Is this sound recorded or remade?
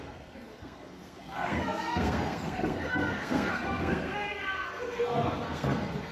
remade